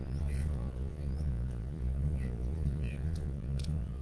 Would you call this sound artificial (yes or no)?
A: yes